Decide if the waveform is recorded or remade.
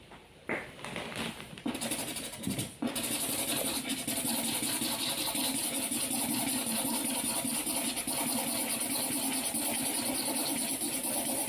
recorded